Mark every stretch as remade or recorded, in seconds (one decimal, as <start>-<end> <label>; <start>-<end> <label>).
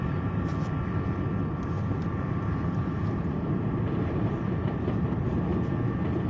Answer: 0.0-0.5 remade; 0.5-2.3 recorded; 2.3-5.5 remade; 5.5-6.3 recorded